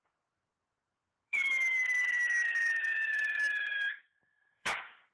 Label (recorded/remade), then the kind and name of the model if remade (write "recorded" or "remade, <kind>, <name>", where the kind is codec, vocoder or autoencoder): remade, autoencoder, DAC-VAE